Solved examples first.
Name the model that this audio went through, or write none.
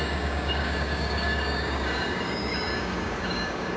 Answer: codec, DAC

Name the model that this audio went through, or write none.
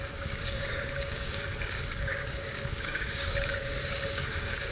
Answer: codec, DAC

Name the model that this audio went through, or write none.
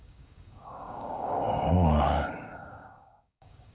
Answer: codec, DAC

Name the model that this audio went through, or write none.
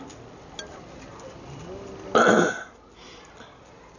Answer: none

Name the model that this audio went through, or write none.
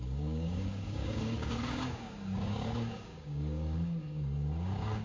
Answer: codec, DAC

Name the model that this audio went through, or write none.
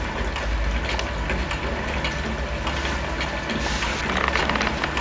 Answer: none